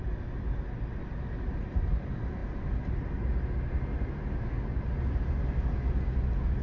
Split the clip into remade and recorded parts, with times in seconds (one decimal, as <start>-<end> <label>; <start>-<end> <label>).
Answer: 0.0-6.6 recorded